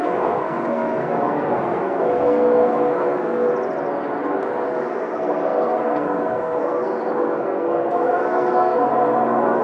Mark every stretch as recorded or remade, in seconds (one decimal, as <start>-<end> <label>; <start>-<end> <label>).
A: 0.0-3.5 remade; 3.5-4.8 recorded; 4.8-8.9 remade; 8.9-9.6 recorded